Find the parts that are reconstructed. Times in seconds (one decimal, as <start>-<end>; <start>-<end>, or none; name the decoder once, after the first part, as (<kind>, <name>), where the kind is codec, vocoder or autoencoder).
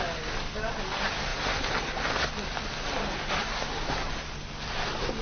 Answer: none